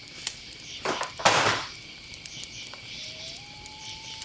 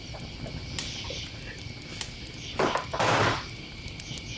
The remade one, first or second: first